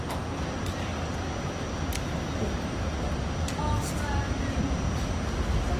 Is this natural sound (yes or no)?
yes